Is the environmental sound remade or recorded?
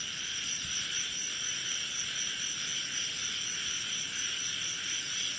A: remade